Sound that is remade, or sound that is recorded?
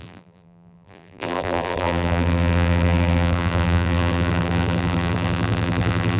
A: remade